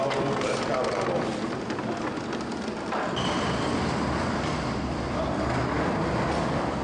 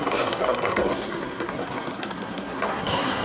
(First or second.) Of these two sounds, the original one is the first